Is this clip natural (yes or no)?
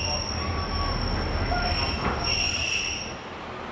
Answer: yes